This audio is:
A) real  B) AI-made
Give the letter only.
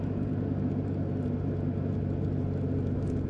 A